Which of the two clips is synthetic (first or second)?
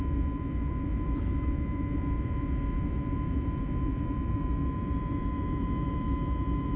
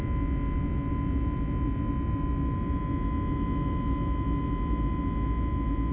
first